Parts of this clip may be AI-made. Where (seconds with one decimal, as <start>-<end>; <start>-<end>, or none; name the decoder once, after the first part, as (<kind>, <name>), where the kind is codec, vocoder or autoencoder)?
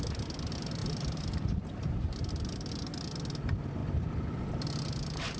0.8-2.3 (vocoder, BigVGAN v2)